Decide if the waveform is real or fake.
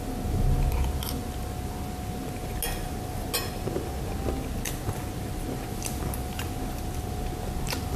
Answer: real